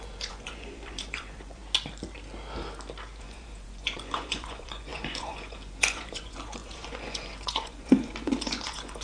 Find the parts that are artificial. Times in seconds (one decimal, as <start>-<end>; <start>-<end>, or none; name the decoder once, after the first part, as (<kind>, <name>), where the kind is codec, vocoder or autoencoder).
0.0-1.6 (vocoder, Vocos); 3.2-9.0